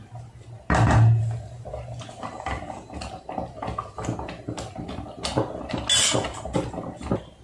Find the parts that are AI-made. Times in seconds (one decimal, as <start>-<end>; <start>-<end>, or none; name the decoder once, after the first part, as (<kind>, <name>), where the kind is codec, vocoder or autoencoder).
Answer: none